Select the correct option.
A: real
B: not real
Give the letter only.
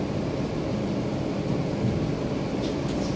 A